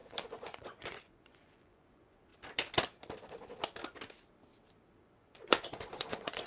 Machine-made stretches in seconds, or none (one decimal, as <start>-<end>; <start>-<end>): 0.0-2.3; 5.0-6.5